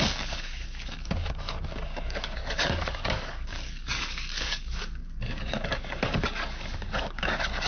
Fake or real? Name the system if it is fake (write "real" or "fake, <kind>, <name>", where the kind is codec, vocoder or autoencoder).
fake, codec, DAC